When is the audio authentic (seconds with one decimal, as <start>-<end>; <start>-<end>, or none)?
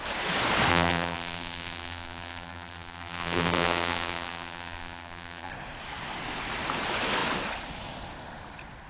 0.0-0.7; 5.5-8.9